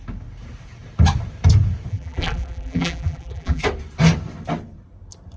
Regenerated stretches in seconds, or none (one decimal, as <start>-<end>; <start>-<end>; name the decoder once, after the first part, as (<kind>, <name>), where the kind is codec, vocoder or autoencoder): 1.9-3.6 (vocoder, BigVGAN v2)